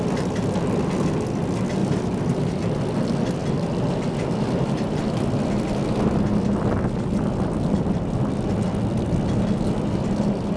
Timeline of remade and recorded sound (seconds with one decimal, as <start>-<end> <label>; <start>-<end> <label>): 0.0-1.8 recorded; 1.8-2.6 remade; 2.6-10.6 recorded